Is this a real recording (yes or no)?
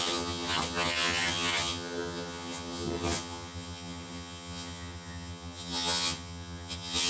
no